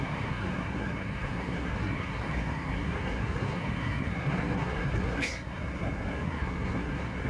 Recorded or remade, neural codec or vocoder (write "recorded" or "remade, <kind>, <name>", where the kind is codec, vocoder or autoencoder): remade, codec, SNAC